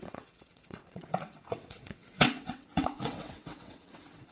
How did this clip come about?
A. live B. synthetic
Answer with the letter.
B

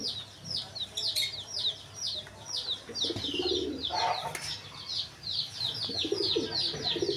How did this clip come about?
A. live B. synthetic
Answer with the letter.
A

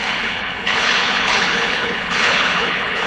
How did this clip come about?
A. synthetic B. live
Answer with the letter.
A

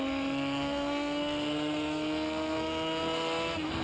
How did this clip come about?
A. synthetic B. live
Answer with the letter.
A